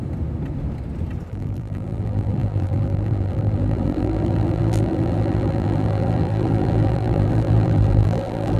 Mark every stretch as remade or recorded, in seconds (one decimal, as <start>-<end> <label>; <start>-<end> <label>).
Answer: 0.0-1.3 recorded; 1.3-8.6 remade